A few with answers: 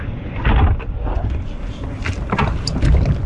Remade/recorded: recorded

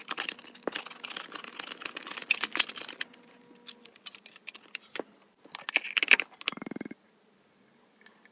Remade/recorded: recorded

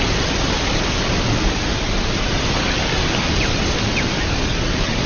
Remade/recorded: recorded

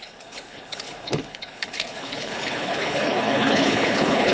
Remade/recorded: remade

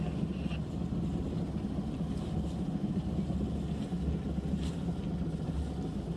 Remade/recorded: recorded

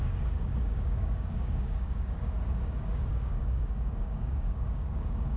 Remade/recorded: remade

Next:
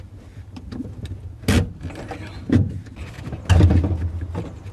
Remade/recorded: recorded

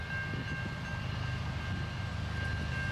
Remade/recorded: recorded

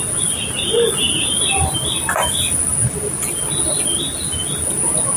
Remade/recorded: recorded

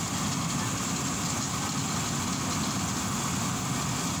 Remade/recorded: recorded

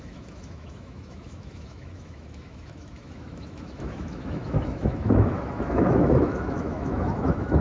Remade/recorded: remade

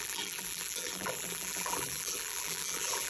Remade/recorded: remade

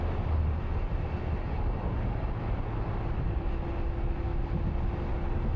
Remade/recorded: recorded